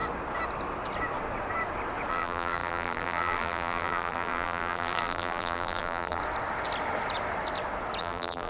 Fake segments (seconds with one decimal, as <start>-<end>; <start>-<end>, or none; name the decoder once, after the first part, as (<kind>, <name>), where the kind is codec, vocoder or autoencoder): 2.1-6.2 (vocoder, BigVGAN v2); 8.0-8.5